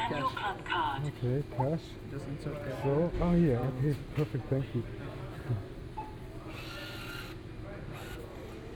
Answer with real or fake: real